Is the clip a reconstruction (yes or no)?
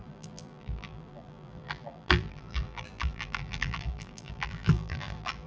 yes